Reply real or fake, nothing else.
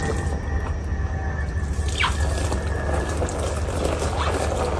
real